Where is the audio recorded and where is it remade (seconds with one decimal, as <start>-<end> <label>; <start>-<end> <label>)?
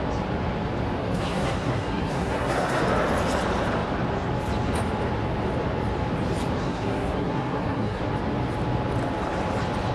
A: 0.0-1.0 recorded; 1.0-2.8 remade; 2.8-6.6 recorded; 6.6-8.0 remade; 8.0-9.9 recorded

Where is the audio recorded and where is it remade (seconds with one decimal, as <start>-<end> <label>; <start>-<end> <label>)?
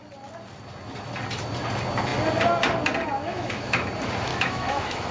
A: 0.0-3.2 recorded; 3.2-3.9 remade; 3.9-4.3 recorded; 4.3-5.1 remade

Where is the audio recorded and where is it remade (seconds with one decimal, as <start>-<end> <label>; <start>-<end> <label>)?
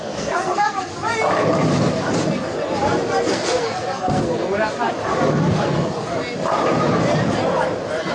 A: 0.0-0.9 remade; 0.9-3.3 recorded; 3.3-4.5 remade; 4.5-5.5 recorded; 5.5-6.1 remade; 6.1-8.1 recorded